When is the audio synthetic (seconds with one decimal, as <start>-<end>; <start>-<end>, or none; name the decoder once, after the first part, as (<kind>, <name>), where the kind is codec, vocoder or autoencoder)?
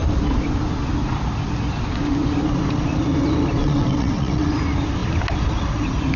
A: 3.6-4.5 (vocoder, WaveNeXt)